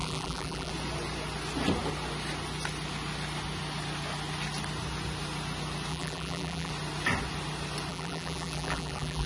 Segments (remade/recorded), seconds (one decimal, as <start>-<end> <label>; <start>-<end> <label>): 0.0-0.7 remade; 0.7-5.9 recorded; 5.9-6.7 remade; 6.7-7.9 recorded; 7.9-9.3 remade